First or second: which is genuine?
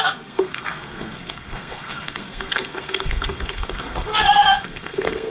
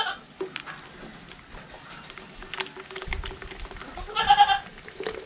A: second